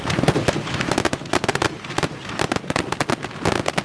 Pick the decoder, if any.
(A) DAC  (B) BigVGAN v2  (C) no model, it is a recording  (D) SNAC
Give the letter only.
C